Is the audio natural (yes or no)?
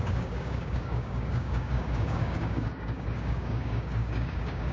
no